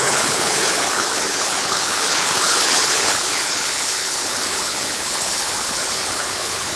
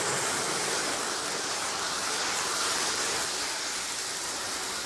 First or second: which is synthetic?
first